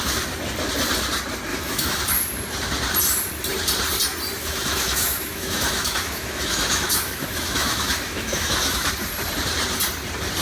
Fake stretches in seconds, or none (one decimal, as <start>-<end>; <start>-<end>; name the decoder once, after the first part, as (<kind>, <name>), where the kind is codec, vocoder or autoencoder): 1.5-2.0 (autoencoder, DAC-VAE); 4.4-8.9